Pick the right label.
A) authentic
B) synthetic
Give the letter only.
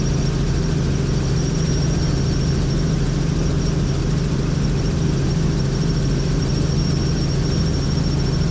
A